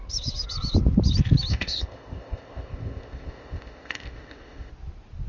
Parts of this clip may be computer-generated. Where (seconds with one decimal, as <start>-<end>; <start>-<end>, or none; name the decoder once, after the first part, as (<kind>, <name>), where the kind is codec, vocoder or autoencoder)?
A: 1.5-4.7 (codec, ZipCodec)